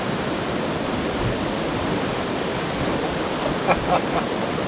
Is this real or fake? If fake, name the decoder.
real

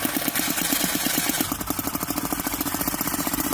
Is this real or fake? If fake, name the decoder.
real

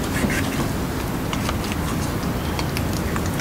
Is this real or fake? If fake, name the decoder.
real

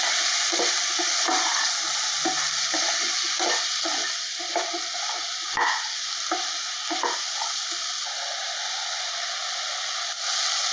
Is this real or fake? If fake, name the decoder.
real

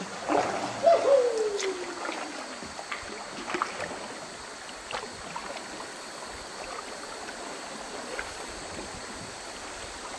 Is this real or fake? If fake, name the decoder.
real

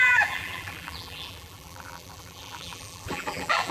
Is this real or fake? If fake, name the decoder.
fake, vocoder, BigVGAN v2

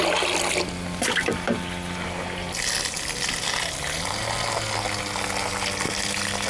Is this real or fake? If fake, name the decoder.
real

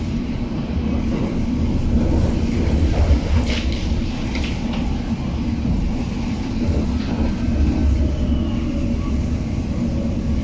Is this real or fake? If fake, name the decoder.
real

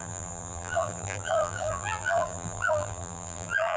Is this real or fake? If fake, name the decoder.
fake, vocoder, BigVGAN v2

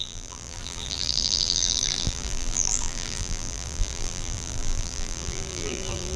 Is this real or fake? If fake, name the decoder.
fake, vocoder, BigVGAN v2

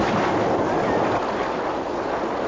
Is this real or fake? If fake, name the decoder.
real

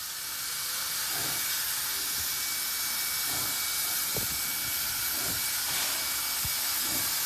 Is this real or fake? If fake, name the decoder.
real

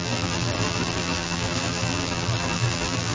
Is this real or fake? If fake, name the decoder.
fake, vocoder, BigVGAN v2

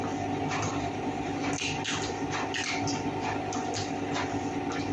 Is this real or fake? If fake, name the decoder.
real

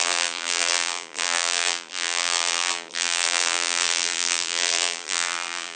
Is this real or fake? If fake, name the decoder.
fake, vocoder, BigVGAN v2